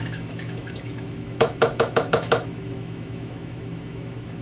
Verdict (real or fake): fake